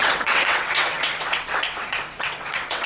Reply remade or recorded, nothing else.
remade